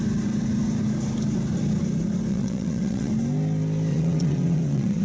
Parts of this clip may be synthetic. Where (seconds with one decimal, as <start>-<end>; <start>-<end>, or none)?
2.3-3.1; 3.9-5.0